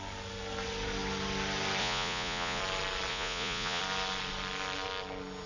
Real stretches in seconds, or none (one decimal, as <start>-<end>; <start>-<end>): 0.0-1.8; 2.6-3.1; 3.8-5.5